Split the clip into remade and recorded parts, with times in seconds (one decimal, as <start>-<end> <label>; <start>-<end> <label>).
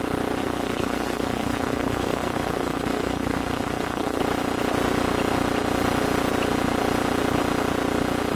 0.0-0.4 recorded; 0.4-4.2 remade; 4.2-8.4 recorded